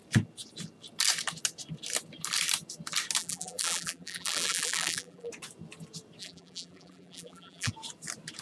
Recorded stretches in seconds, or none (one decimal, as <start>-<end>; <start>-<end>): 0.0-3.2; 5.3-6.2; 7.7-8.4